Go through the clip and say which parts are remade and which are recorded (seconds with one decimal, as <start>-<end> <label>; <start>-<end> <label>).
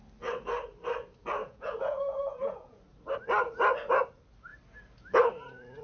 0.0-1.4 recorded; 1.4-2.8 remade; 2.8-5.8 recorded